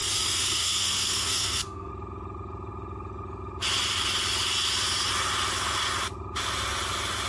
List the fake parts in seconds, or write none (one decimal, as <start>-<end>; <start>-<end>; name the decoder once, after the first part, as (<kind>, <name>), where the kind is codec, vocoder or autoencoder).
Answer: 0.0-1.9 (codec, SNAC)